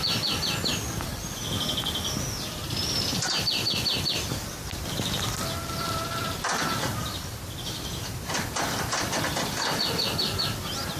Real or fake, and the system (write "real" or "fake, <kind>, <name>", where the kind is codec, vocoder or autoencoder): real